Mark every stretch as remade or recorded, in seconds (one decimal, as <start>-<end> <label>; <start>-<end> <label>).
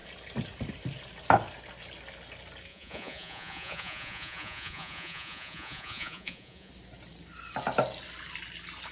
0.0-2.7 recorded; 2.7-6.7 remade; 6.7-8.9 recorded